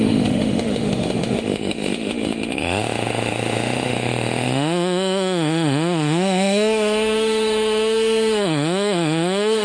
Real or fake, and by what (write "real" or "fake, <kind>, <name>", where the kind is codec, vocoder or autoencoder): fake, autoencoder, DAC-VAE